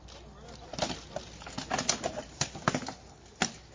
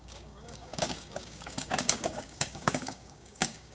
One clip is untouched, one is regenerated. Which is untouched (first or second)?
first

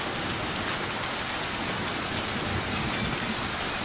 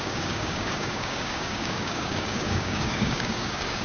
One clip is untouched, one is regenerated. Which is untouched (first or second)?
first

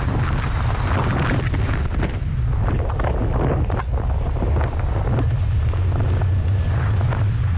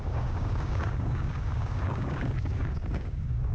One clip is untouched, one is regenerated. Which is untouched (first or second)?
first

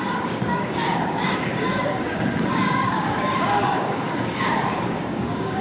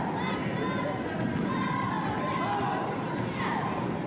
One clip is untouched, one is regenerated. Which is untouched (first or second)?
second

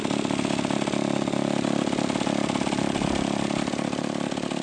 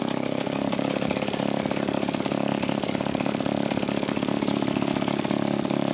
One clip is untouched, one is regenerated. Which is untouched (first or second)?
first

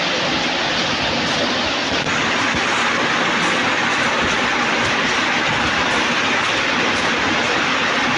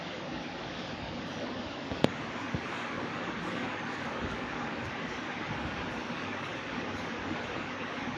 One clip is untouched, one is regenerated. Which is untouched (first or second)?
first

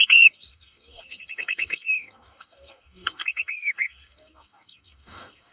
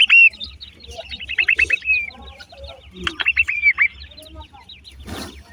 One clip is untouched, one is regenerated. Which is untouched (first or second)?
second